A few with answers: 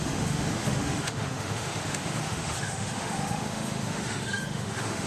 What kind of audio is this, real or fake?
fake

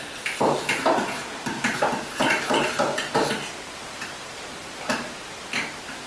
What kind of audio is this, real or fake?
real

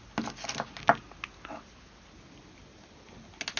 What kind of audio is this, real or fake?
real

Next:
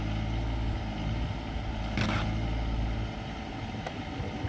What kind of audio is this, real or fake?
real